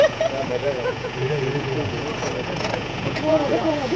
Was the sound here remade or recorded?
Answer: remade